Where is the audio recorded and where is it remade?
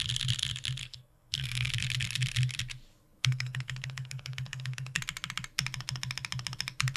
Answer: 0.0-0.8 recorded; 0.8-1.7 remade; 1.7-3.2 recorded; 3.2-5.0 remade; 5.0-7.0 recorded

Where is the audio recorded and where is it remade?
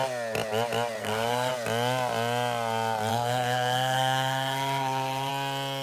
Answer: 0.0-1.0 recorded; 1.0-1.5 remade; 1.5-3.1 recorded; 3.1-5.3 remade; 5.3-5.8 recorded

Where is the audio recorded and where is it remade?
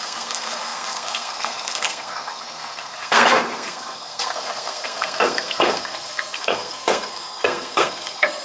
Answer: 0.0-8.4 remade